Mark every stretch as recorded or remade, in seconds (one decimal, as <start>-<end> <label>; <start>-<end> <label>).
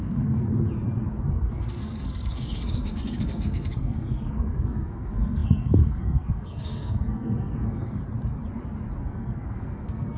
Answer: 0.0-0.5 remade; 0.5-1.3 recorded; 1.3-8.0 remade; 8.0-9.0 recorded; 9.0-10.2 remade